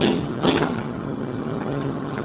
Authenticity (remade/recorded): remade